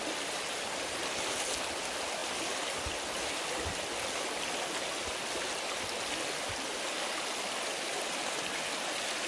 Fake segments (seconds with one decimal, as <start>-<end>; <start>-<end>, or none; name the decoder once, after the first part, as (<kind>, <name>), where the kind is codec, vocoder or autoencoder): none